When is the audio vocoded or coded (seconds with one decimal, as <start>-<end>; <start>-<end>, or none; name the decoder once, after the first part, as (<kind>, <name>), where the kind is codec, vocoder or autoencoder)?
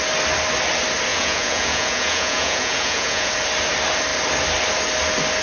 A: 1.1-3.3 (vocoder, Vocos)